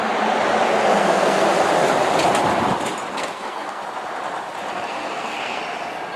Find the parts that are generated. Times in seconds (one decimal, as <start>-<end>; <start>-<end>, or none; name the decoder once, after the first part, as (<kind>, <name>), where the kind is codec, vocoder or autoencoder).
0.9-1.5 (codec, SNAC); 3.1-3.8; 4.9-5.6